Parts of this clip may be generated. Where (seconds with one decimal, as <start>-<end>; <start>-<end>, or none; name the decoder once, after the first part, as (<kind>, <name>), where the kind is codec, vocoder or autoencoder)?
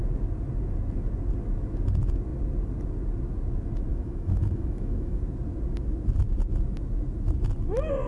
3.9-5.2 (autoencoder, DAC-VAE)